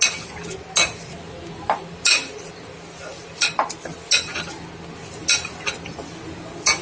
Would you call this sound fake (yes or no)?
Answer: no